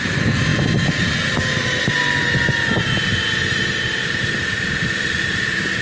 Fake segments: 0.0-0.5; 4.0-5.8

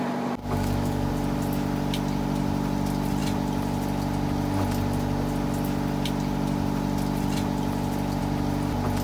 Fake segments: 0.4-1.1

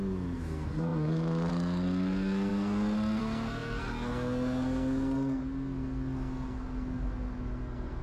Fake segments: 0.0-8.0

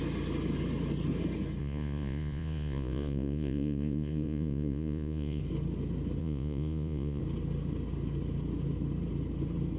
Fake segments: 1.6-5.4; 6.2-7.2

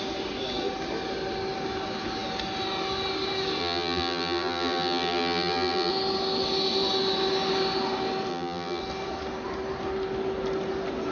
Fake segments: 3.6-5.9; 8.3-8.8

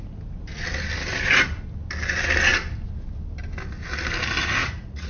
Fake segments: 4.6-5.1

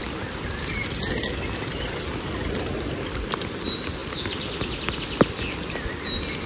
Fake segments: none

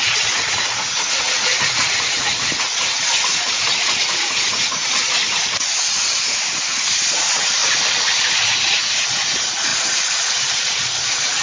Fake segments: 0.0-7.6; 8.3-11.4